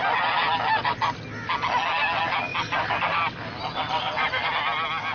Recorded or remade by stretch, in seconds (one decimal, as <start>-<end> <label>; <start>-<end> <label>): 0.0-5.1 recorded